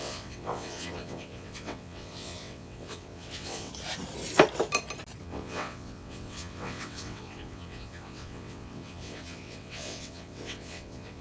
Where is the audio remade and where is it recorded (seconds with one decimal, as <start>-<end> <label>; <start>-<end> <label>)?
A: 0.0-3.7 remade; 3.7-5.2 recorded; 5.2-11.2 remade